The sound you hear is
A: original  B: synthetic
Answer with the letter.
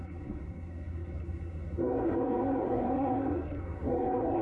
B